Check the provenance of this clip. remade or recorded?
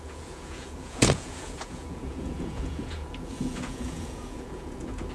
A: remade